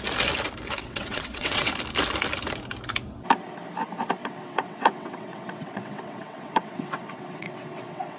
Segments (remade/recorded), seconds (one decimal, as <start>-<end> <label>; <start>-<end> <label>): 0.0-0.8 recorded; 0.8-1.7 remade; 1.7-4.2 recorded; 4.2-8.2 remade